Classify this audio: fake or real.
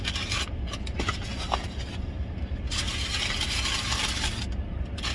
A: real